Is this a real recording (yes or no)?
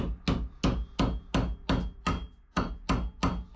yes